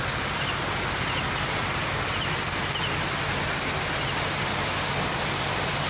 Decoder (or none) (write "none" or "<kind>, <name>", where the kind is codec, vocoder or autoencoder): none